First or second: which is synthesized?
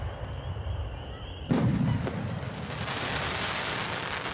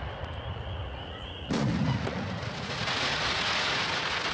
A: second